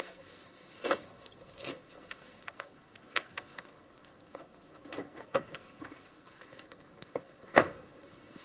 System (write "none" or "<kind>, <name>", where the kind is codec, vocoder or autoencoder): codec, SNAC